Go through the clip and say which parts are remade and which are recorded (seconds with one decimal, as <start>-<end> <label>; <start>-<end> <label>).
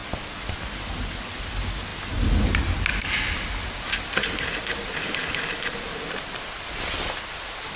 0.0-7.8 recorded